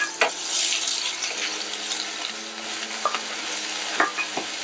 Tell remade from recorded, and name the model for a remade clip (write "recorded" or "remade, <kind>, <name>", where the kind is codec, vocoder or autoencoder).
recorded